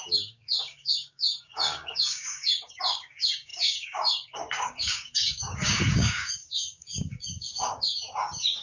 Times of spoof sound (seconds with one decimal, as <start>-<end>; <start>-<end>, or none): 0.0-8.6